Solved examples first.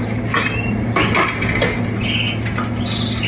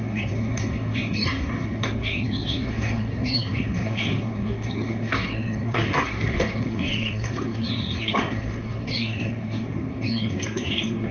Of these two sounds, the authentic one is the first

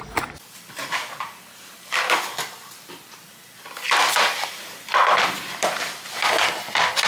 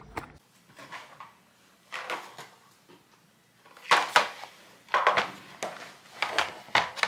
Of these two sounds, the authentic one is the second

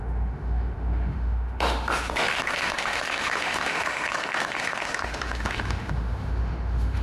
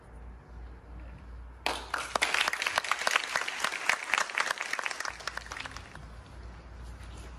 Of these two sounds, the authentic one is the second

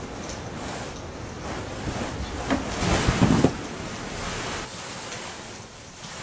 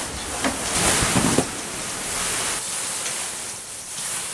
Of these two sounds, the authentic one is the first